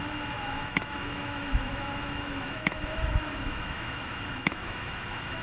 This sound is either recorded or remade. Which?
remade